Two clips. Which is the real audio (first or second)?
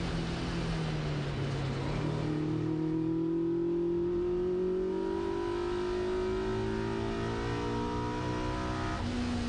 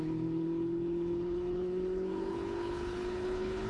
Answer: first